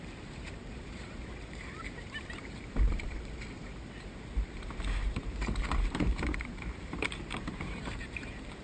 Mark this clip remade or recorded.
remade